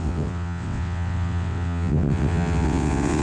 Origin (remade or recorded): remade